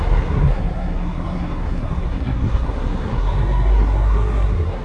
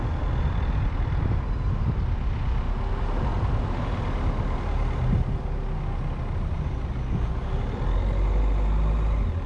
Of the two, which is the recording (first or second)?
second